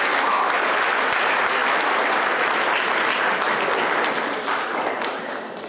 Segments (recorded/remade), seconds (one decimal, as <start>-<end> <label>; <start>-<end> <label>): 0.0-5.7 recorded